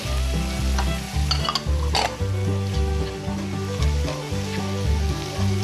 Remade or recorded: recorded